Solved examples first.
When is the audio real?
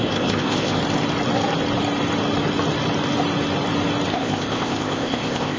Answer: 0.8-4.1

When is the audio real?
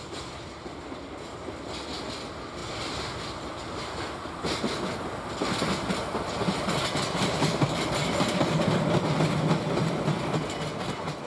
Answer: 0.0-11.3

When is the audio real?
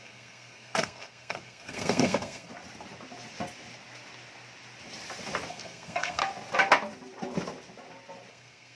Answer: 2.5-5.5; 6.2-8.3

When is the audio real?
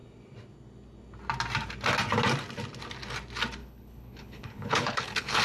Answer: 0.0-3.6